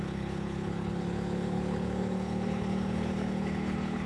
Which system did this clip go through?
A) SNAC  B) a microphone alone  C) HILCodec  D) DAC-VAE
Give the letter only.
C